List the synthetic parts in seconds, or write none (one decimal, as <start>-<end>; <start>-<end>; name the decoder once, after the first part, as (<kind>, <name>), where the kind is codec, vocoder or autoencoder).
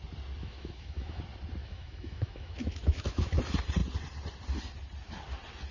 0.4-1.2 (autoencoder, DAC-VAE); 1.6-3.4